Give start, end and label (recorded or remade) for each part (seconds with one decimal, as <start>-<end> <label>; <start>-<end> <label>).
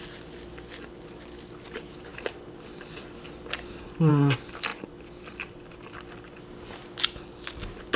0.0-8.0 recorded